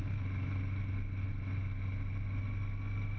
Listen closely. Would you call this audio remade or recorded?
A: recorded